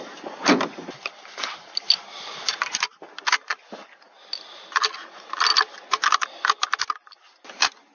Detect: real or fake real